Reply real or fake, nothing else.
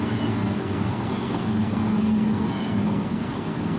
fake